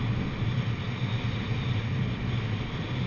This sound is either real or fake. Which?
real